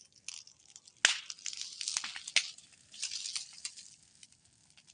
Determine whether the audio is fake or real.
real